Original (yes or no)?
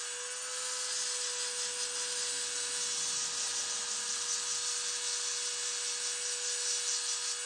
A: yes